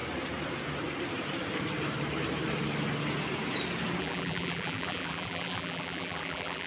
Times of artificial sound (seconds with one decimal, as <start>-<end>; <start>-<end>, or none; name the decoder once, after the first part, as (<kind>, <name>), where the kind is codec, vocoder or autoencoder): 4.0-6.7 (vocoder, BigVGAN v2)